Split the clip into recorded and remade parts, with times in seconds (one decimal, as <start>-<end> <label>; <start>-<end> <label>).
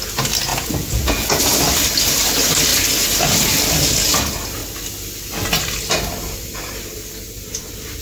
0.0-0.5 recorded; 0.5-1.4 remade; 1.4-8.0 recorded